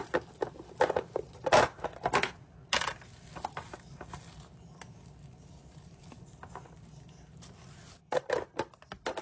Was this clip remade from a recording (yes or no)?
no